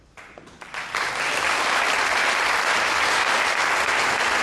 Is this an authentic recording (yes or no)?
yes